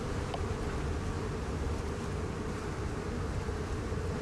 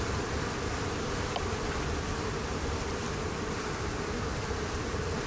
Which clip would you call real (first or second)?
first